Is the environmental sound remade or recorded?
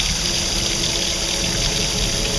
recorded